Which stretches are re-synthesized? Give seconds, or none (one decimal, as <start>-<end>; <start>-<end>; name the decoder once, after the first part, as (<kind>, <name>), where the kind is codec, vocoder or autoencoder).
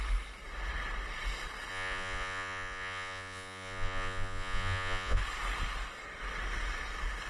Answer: 1.7-5.2 (vocoder, Vocos)